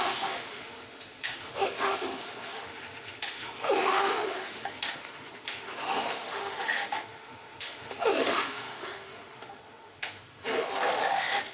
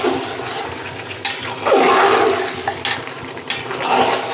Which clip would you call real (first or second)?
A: second